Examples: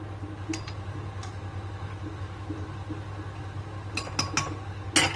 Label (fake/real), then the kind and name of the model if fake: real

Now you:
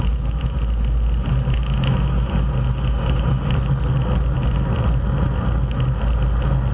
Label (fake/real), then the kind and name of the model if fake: real